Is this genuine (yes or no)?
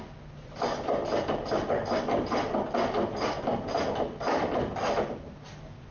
yes